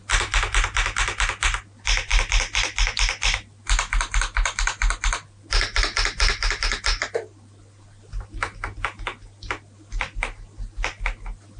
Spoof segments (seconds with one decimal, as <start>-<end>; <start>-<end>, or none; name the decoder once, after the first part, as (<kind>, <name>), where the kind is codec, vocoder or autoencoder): none